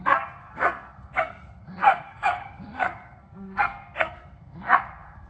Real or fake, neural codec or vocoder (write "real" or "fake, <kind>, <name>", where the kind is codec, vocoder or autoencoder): fake, codec, SNAC